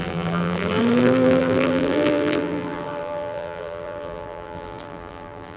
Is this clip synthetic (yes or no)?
yes